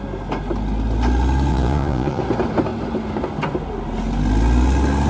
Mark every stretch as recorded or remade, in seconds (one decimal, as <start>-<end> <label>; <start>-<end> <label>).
0.0-1.5 recorded; 1.5-2.2 remade; 2.2-5.1 recorded